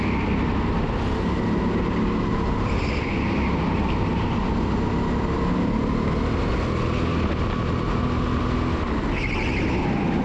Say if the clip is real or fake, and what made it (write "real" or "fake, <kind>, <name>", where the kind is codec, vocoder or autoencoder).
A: real